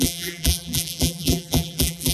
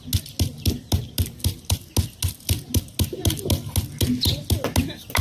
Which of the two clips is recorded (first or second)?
second